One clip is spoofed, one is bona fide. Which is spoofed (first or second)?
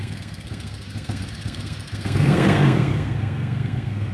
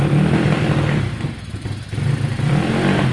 first